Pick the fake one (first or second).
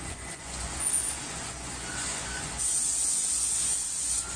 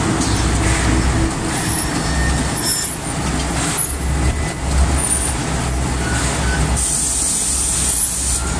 first